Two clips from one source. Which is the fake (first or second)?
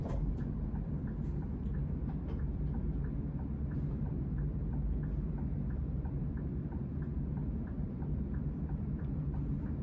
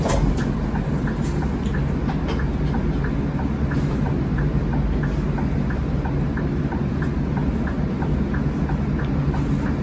first